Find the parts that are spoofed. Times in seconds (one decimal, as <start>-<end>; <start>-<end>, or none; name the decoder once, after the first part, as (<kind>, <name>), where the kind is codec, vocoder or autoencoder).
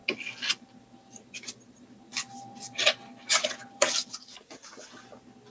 2.1-4.5 (vocoder, BigVGAN v2)